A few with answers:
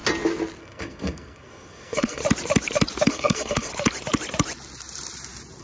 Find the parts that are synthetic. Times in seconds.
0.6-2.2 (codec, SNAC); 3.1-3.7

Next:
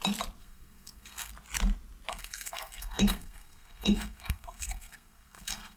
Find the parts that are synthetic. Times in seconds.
0.4-1.3 (codec, SNAC); 2.1-5.8

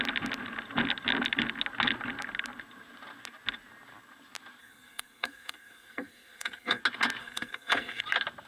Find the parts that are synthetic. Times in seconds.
4.6-6.8 (codec, SNAC); 7.2-8.0